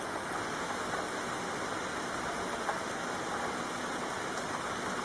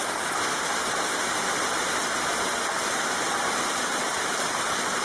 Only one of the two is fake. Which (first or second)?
second